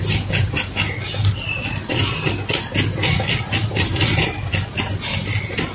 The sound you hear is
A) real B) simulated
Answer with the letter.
A